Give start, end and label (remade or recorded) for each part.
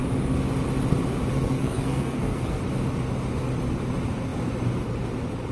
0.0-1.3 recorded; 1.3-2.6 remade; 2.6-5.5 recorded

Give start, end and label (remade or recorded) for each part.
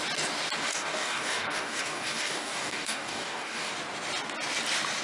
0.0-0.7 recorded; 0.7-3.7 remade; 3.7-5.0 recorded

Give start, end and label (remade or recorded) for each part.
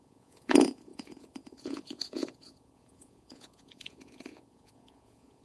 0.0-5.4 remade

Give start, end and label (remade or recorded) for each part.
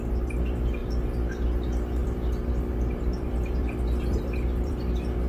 0.0-2.0 recorded; 2.0-5.3 remade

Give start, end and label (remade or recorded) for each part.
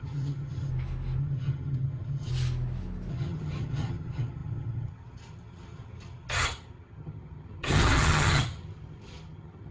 0.0-0.7 remade; 0.7-1.2 recorded; 1.2-2.3 remade; 2.3-3.1 recorded; 3.1-9.7 remade